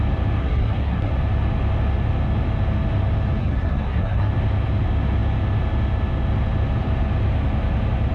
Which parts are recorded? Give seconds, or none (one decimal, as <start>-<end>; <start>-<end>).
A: 0.0-0.4; 1.1-3.4; 4.3-8.1